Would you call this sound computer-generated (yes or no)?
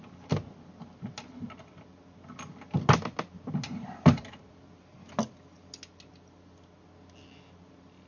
no